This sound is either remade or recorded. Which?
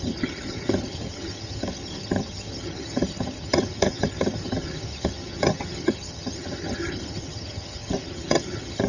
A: remade